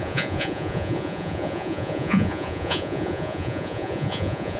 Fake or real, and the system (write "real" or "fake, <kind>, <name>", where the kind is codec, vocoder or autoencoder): fake, vocoder, Vocos